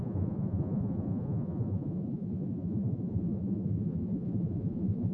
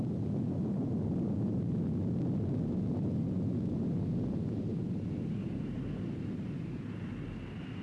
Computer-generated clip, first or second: first